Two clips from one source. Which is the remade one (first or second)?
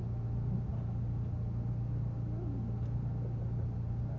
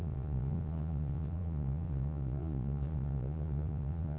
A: second